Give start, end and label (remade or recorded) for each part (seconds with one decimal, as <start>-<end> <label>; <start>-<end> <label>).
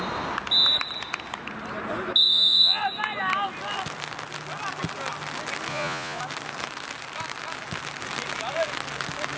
0.0-2.2 recorded; 2.2-2.8 remade; 2.8-5.7 recorded; 5.7-6.2 remade; 6.2-9.4 recorded